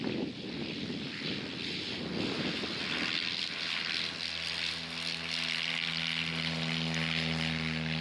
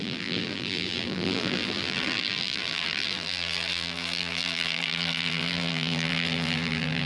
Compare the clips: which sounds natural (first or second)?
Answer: first